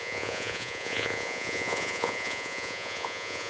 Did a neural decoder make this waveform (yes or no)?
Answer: yes